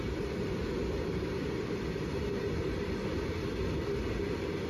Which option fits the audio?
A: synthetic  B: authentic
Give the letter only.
B